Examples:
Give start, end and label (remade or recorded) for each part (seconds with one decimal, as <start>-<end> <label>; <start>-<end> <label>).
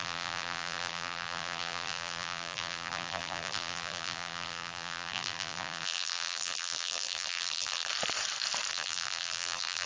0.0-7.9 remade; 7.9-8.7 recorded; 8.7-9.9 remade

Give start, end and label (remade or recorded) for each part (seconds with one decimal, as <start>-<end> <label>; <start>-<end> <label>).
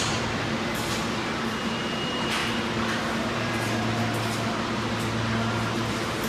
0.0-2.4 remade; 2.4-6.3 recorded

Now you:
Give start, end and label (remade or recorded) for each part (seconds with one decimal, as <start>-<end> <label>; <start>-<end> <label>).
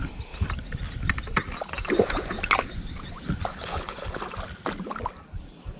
0.0-3.5 recorded; 3.5-4.2 remade; 4.2-5.8 recorded